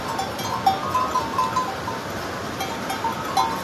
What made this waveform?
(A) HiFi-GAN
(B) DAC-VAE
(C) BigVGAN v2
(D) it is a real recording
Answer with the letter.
D